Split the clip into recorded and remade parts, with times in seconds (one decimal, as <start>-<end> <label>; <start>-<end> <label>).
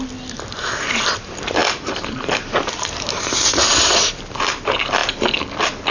0.0-5.9 recorded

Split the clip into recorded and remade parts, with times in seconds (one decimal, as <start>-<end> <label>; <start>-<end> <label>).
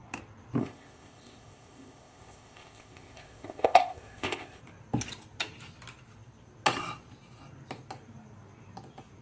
0.0-0.6 recorded; 0.6-4.6 remade; 4.6-9.2 recorded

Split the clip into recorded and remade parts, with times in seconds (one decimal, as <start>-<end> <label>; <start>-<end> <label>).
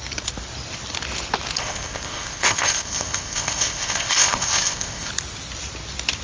0.0-1.6 recorded; 1.6-5.1 remade; 5.1-6.2 recorded